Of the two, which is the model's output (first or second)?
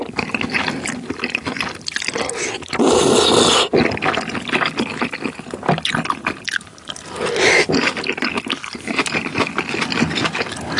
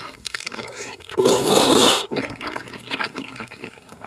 second